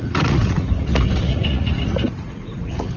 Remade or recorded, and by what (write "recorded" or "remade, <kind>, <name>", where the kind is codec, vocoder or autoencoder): remade, vocoder, Vocos